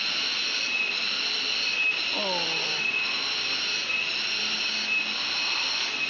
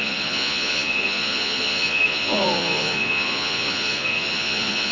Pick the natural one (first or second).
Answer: first